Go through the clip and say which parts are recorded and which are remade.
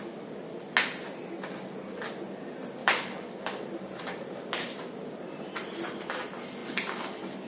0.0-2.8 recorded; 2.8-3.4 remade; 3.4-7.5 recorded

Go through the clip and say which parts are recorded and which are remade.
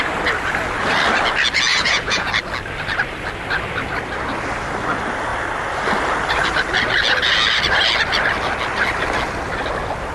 0.0-1.7 recorded; 1.7-2.3 remade; 2.3-10.1 recorded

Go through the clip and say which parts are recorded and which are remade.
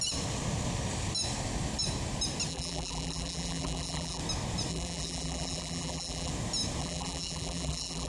0.0-2.5 recorded; 2.5-4.2 remade; 4.2-4.7 recorded; 4.7-6.3 remade; 6.3-6.8 recorded; 6.8-8.1 remade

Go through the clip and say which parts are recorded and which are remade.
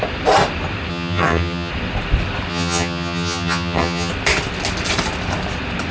0.0-0.9 recorded; 0.9-1.7 remade; 1.7-2.5 recorded; 2.5-4.1 remade; 4.1-5.9 recorded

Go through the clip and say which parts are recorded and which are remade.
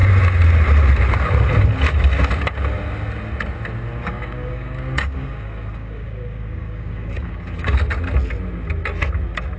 0.0-4.0 recorded; 4.0-7.7 remade; 7.7-9.6 recorded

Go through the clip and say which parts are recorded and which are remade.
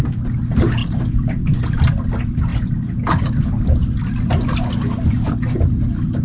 0.0-0.8 recorded; 0.8-1.6 remade; 1.6-2.5 recorded; 2.5-4.3 remade; 4.3-6.2 recorded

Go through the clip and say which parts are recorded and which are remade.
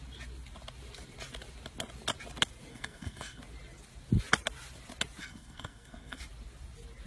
0.0-2.7 recorded; 2.7-3.4 remade; 3.4-5.2 recorded; 5.2-6.2 remade; 6.2-7.1 recorded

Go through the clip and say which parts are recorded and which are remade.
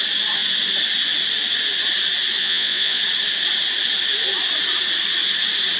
0.0-2.4 recorded; 2.4-3.0 remade; 3.0-5.8 recorded